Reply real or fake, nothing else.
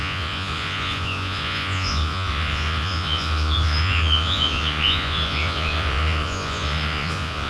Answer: fake